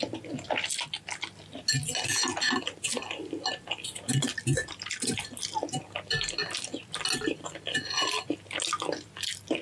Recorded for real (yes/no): yes